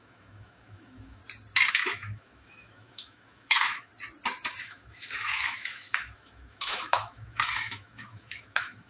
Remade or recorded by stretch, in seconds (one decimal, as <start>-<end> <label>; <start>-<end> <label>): 0.0-1.2 remade; 1.2-1.7 recorded; 1.7-3.9 remade; 3.9-4.6 recorded; 4.6-8.9 remade